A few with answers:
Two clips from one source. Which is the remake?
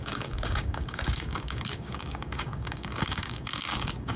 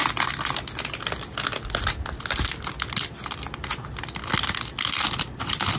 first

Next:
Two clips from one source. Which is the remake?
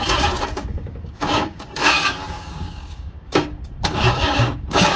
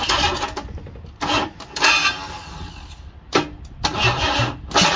first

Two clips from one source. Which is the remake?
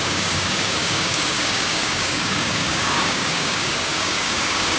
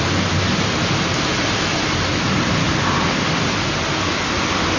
first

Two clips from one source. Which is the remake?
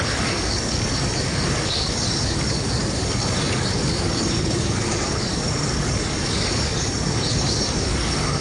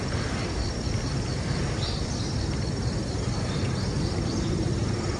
first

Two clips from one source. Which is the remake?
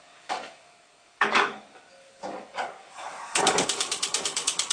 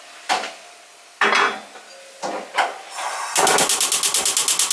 first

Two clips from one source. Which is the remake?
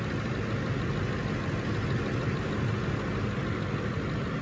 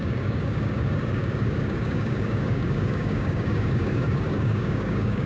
second